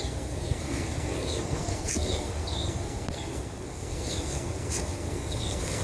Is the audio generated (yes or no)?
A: yes